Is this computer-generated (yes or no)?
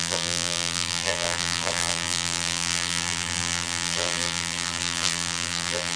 yes